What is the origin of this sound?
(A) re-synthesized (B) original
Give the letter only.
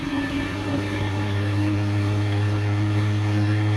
A